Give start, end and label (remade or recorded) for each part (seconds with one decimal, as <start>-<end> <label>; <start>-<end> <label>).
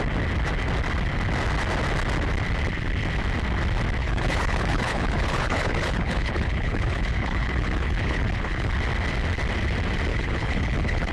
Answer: 0.0-4.0 recorded; 4.0-8.7 remade; 8.7-10.1 recorded; 10.1-11.1 remade